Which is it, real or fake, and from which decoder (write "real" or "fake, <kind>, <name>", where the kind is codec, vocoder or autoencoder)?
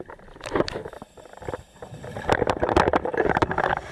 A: real